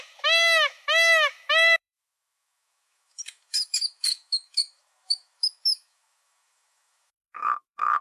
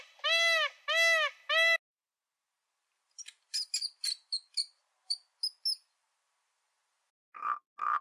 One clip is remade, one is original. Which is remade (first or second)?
first